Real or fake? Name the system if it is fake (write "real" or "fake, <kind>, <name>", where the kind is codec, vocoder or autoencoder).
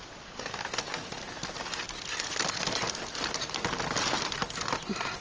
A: real